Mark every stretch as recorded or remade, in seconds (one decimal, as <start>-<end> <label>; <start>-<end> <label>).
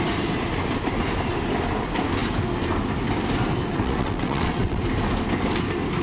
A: 0.0-3.7 recorded; 3.7-4.8 remade; 4.8-6.0 recorded